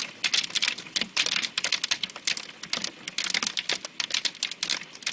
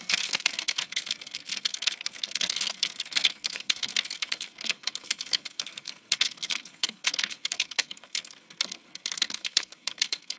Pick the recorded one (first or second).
first